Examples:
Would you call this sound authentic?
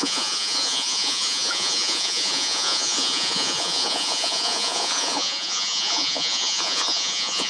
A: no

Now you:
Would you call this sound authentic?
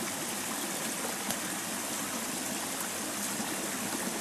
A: yes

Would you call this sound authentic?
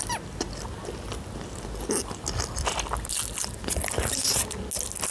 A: yes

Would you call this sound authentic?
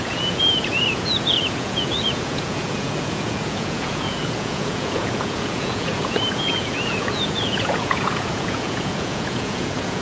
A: no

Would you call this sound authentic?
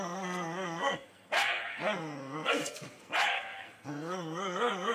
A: no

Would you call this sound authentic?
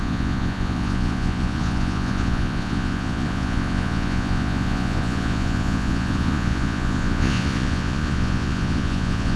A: no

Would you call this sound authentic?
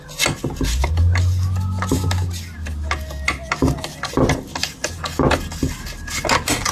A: yes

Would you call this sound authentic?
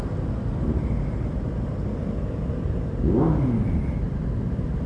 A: yes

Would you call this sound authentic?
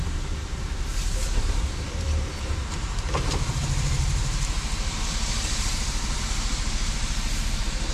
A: no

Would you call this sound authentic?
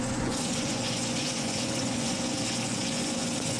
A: no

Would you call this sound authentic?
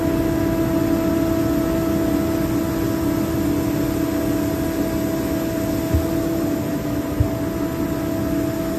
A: yes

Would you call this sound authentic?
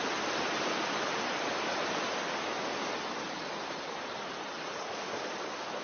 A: yes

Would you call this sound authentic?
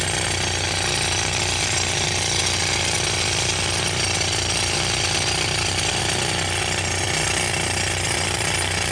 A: yes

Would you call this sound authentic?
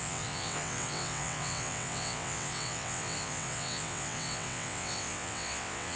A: no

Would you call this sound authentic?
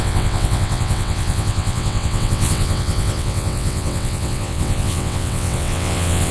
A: no